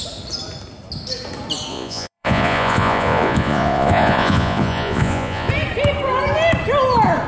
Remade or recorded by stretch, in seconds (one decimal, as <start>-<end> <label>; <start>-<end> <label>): 0.0-1.7 recorded; 1.7-5.5 remade; 5.5-7.3 recorded